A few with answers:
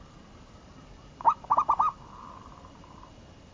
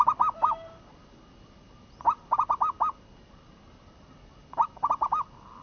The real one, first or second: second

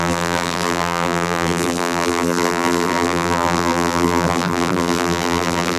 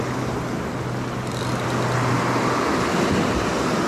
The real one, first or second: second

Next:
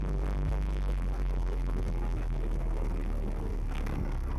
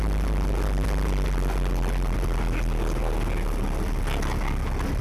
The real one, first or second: second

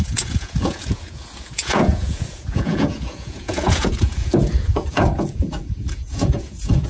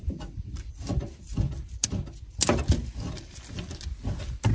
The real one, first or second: second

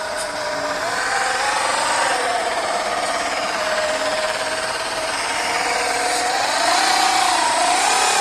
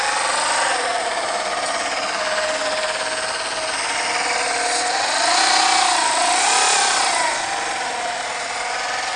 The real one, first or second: second